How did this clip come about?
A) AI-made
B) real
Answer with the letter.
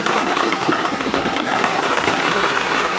A